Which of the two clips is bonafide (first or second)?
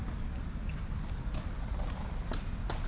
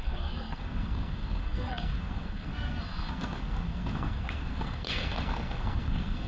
first